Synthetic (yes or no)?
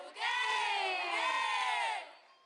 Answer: yes